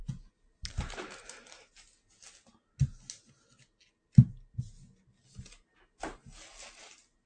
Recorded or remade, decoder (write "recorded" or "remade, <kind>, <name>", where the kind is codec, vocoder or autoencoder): recorded